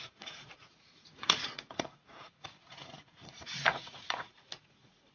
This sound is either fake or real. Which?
fake